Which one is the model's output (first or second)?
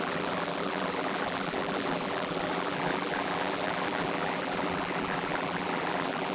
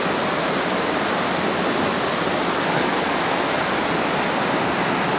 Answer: first